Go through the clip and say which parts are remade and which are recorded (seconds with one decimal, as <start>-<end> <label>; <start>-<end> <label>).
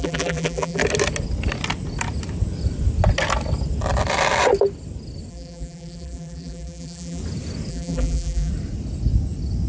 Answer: 0.0-0.8 remade; 0.8-5.3 recorded; 5.3-7.2 remade; 7.2-7.7 recorded; 7.7-8.5 remade; 8.5-9.7 recorded